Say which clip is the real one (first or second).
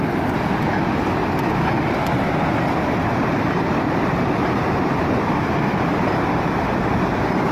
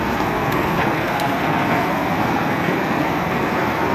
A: first